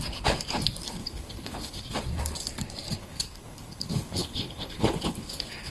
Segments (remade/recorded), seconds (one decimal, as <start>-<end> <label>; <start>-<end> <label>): 0.0-1.0 recorded; 1.0-1.9 remade; 1.9-3.0 recorded; 3.0-5.7 remade